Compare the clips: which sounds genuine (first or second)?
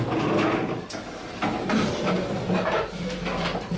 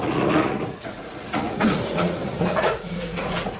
first